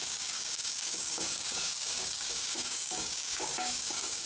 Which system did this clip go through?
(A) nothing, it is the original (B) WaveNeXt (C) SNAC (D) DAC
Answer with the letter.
D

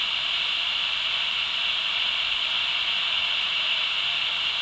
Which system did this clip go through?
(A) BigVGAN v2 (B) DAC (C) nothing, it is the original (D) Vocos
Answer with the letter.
C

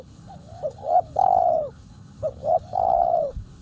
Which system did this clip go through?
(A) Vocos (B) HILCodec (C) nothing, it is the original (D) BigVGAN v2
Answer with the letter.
B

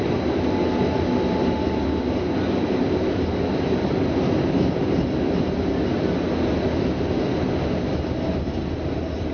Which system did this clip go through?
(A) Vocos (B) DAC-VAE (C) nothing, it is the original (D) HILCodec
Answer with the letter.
C